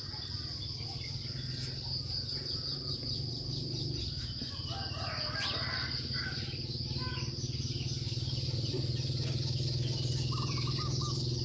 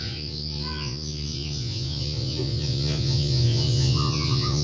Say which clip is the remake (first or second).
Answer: second